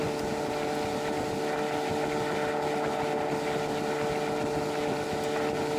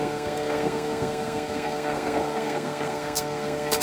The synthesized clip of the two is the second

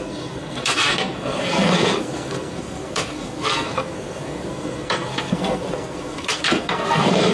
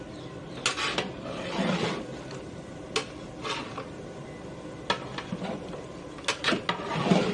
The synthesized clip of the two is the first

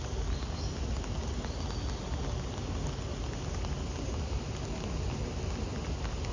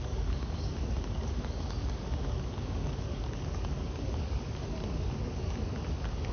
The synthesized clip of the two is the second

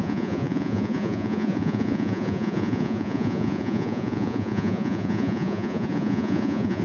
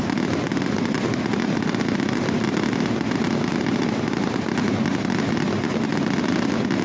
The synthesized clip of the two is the first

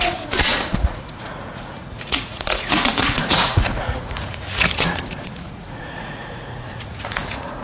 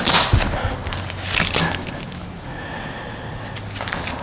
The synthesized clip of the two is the first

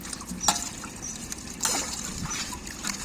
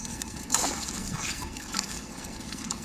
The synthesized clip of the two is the second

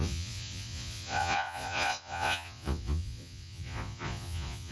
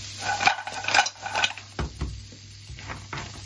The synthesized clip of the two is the first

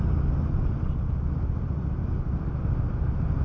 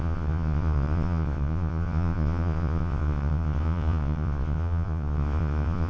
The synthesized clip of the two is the second